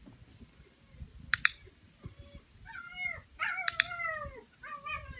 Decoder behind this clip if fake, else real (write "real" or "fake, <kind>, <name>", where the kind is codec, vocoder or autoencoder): real